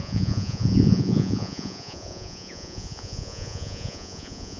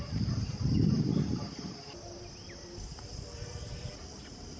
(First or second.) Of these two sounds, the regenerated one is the first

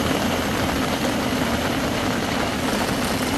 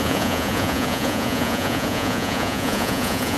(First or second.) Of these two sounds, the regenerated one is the second